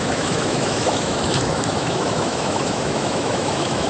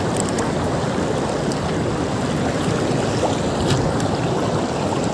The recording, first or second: second